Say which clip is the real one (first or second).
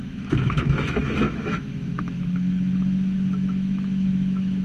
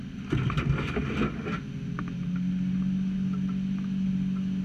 second